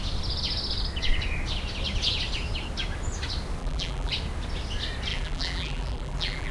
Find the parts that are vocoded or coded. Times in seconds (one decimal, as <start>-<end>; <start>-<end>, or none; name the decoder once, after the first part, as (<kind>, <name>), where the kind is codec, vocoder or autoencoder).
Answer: 3.6-4.1 (vocoder, BigVGAN v2); 5.1-6.5

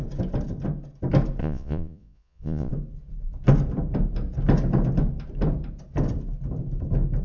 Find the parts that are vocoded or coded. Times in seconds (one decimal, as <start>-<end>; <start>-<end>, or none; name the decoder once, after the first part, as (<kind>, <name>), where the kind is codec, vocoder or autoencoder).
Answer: 1.4-2.7 (vocoder, Vocos)